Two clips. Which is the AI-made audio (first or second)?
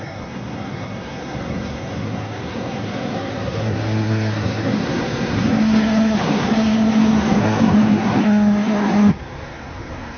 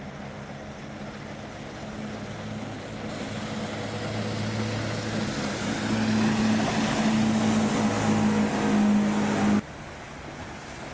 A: first